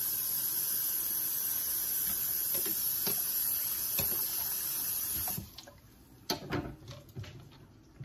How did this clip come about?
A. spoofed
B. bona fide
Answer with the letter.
B